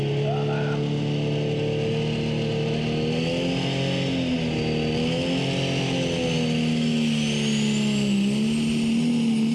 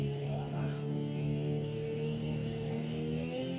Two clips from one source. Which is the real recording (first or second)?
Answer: first